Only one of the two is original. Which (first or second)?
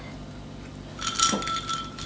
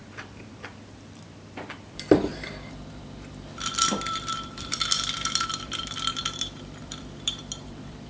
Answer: first